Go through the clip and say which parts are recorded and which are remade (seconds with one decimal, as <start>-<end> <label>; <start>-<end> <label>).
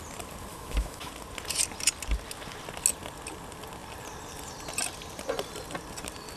0.0-0.5 recorded; 0.5-1.1 remade; 1.1-6.4 recorded